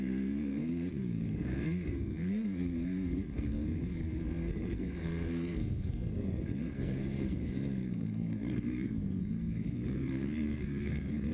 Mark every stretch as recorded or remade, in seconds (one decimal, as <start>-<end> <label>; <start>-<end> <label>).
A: 0.0-11.3 remade